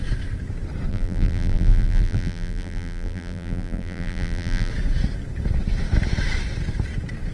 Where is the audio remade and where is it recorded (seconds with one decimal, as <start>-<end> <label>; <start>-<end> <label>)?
0.0-0.9 recorded; 0.9-4.7 remade; 4.7-7.3 recorded